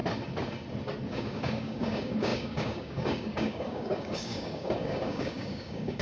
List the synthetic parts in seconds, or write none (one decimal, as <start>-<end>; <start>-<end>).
1.1-6.0